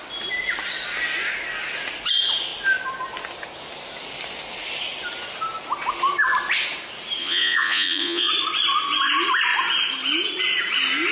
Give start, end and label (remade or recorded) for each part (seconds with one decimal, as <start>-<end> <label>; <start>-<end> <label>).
0.0-7.2 recorded; 7.2-8.3 remade; 8.3-11.1 recorded